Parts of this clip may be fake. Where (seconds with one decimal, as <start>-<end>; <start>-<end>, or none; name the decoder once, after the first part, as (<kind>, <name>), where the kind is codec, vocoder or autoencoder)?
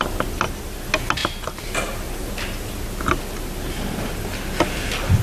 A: none